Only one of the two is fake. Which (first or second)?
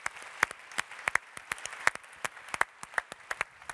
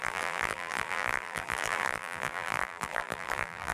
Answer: second